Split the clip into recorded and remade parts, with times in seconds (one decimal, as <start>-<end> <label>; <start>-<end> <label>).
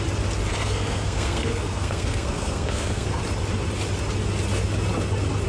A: 0.0-0.5 recorded; 0.5-3.2 remade; 3.2-5.5 recorded